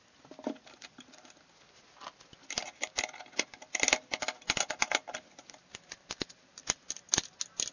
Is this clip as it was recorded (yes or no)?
yes